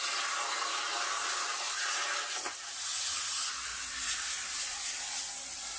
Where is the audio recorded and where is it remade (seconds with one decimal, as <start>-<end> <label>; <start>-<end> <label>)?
0.0-5.8 recorded